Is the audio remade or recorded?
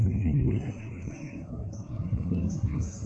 remade